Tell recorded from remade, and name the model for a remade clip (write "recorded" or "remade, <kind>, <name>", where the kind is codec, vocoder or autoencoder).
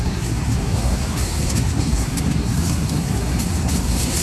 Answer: remade, codec, SNAC